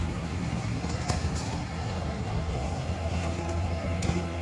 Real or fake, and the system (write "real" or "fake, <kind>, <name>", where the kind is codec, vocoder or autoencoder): fake, codec, SNAC